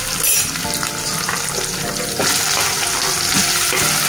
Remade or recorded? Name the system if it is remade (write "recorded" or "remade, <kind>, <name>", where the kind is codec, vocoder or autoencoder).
recorded